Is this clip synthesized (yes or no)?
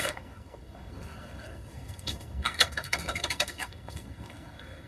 yes